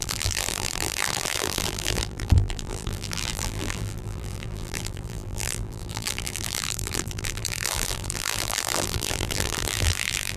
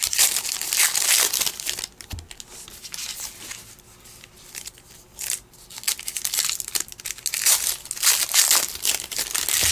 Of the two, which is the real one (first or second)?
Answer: second